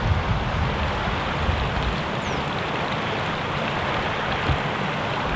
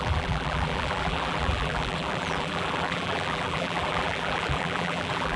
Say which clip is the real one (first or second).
first